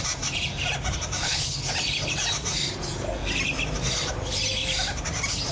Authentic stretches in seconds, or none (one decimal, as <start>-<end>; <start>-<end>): 0.0-1.2; 1.7-5.5